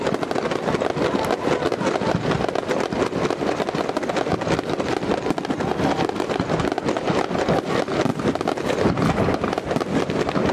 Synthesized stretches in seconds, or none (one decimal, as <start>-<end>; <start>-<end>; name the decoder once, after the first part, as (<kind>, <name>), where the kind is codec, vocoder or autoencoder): none

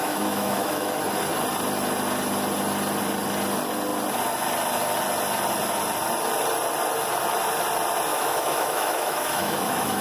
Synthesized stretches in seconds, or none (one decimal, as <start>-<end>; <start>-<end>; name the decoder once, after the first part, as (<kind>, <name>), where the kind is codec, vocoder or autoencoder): 0.0-0.9 (autoencoder, DAC-VAE); 8.1-10.0

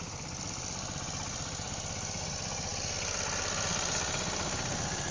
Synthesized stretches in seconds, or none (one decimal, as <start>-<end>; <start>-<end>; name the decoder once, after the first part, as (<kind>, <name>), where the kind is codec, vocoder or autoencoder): 0.0-5.1 (vocoder, BigVGAN v2)

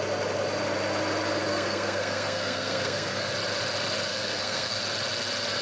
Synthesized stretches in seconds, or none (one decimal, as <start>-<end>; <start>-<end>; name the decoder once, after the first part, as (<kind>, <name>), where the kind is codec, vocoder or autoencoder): 1.5-3.3 (codec, SNAC); 4.1-4.8

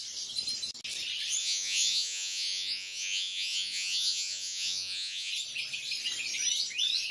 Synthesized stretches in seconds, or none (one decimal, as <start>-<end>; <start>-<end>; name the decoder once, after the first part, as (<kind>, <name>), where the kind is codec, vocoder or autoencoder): 1.4-5.3 (vocoder, Vocos)

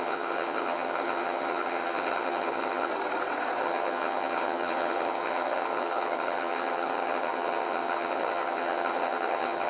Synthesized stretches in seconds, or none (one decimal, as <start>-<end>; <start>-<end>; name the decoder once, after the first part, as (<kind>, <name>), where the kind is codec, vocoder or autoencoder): 0.0-2.9 (vocoder, HiFi-GAN); 3.6-9.7